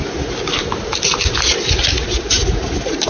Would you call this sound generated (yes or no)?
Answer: no